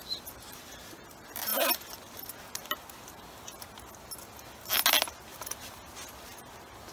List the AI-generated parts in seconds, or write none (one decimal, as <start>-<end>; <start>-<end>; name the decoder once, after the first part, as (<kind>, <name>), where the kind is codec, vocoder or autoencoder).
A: none